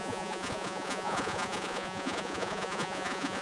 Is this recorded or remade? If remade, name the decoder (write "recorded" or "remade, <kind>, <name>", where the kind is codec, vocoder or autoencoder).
remade, vocoder, Vocos